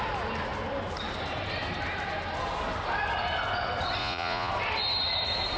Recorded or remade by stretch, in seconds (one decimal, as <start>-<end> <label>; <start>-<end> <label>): 0.0-4.0 recorded; 4.0-4.5 remade; 4.5-5.6 recorded